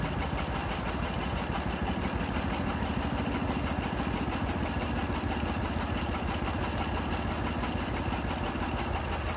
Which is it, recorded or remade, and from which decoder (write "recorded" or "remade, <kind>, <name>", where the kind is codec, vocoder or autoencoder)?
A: recorded